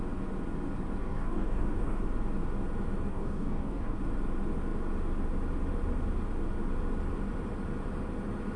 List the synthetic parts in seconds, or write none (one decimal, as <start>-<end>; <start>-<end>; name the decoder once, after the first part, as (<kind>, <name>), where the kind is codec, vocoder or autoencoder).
1.0-2.0 (codec, DAC); 3.1-4.0